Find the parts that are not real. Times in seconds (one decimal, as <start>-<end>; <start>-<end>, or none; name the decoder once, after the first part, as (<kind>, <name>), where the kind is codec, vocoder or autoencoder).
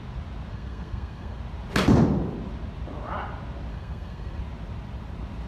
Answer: 0.5-1.4 (codec, SNAC); 3.7-4.4